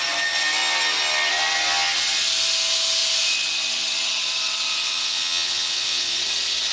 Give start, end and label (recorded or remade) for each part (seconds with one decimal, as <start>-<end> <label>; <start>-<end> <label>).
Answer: 0.0-4.8 recorded; 4.8-6.2 remade; 6.2-6.7 recorded